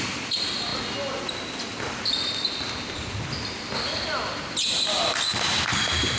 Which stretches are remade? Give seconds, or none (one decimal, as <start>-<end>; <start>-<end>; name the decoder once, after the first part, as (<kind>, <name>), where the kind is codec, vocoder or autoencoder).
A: none

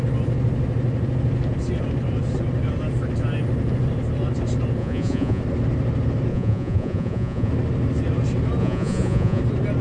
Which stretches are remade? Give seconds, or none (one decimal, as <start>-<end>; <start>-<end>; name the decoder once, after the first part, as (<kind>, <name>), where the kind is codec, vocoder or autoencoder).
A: 4.8-5.4 (vocoder, Vocos); 6.3-7.5; 8.6-9.4